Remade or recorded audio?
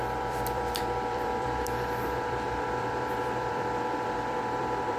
remade